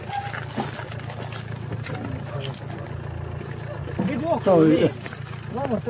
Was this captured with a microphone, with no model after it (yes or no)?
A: yes